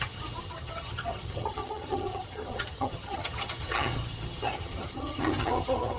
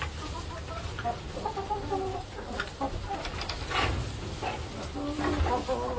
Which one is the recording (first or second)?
second